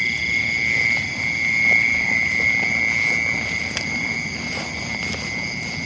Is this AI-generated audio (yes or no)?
no